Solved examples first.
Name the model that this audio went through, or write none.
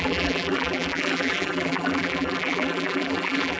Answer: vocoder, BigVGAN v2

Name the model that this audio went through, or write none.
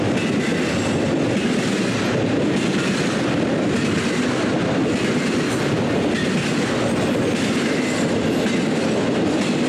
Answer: none